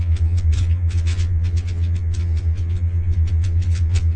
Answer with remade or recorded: remade